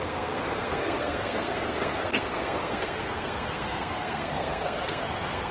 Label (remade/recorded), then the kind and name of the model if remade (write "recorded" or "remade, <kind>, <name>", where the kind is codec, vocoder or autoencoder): remade, codec, SNAC